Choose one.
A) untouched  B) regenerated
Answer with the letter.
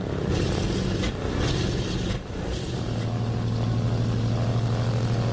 A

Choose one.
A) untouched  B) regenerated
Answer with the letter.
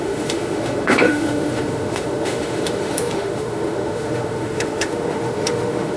B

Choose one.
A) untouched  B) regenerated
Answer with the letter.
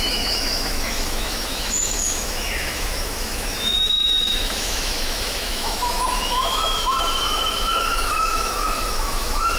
B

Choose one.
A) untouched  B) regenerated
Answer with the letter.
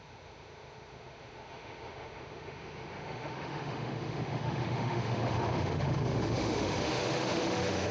B